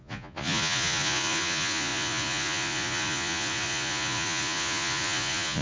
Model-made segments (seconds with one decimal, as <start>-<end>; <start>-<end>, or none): 0.0-5.6